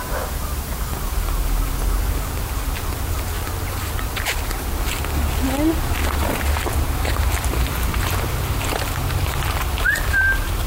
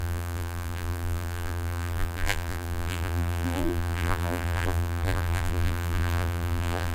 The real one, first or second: first